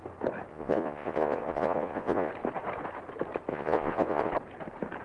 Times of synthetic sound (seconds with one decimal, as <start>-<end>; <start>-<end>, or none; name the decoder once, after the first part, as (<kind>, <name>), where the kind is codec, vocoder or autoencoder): 0.5-2.3 (vocoder, Vocos); 3.5-4.3